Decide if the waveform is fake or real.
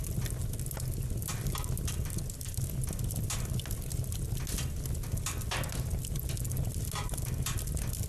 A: real